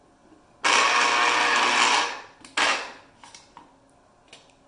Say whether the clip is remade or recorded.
recorded